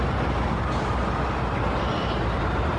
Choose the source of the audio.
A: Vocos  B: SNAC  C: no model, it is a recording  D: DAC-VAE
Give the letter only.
C